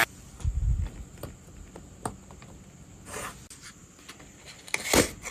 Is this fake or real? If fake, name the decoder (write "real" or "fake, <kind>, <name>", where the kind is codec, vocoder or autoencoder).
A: real